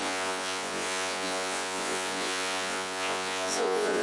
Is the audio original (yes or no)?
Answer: no